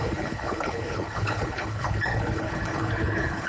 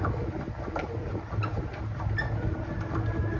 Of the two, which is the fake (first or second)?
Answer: first